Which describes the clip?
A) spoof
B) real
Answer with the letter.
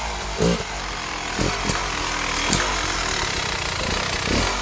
B